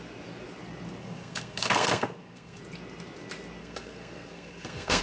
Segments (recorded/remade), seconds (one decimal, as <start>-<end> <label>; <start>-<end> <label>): 0.0-1.0 recorded; 1.0-2.6 remade; 2.6-3.6 recorded; 3.6-5.0 remade